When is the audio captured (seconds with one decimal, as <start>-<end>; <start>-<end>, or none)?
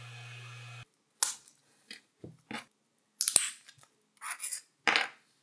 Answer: 0.0-5.4